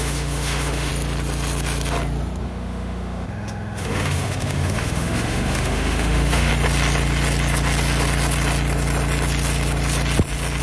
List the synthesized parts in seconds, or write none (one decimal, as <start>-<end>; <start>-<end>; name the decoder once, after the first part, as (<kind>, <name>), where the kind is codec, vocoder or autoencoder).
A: 0.0-0.9 (autoencoder, DAC-VAE); 2.4-6.5